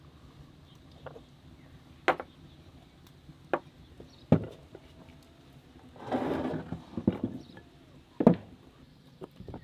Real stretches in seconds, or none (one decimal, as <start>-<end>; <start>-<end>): 0.0-9.6